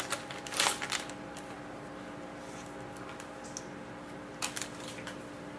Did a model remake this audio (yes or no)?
no